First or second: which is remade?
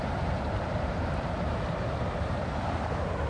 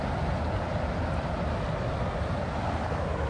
first